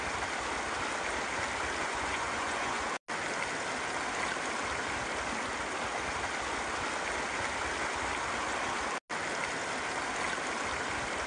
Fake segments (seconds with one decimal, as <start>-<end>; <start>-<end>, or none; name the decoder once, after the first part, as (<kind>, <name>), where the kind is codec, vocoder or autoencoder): 1.8-2.9 (vocoder, Vocos)